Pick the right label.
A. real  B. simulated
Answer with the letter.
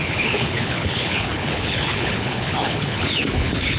B